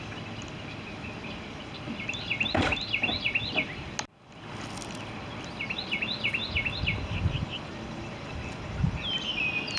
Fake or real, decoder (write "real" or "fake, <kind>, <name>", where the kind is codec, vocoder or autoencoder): real